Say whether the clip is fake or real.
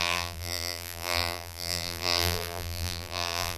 fake